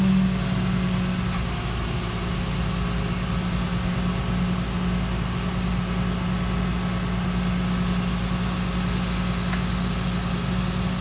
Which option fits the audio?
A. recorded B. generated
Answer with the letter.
A